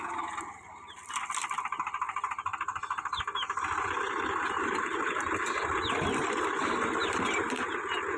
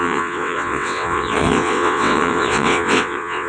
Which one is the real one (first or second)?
first